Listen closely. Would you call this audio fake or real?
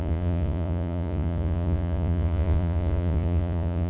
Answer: fake